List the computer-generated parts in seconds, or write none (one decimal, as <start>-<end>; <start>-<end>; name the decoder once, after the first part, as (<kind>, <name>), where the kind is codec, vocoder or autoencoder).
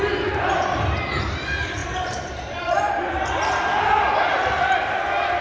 1.8-3.8 (vocoder, BigVGAN v2)